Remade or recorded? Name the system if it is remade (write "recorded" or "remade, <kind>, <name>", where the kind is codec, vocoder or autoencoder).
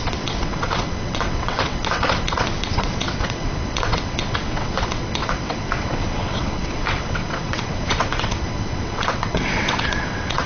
remade, vocoder, WaveNeXt